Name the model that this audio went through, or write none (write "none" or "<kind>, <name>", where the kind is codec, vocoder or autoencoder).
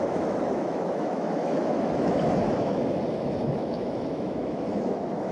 autoencoder, DAC-VAE